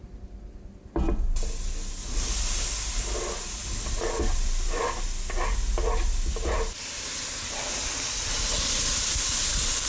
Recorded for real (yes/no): yes